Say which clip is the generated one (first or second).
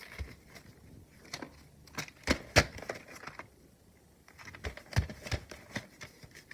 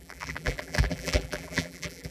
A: second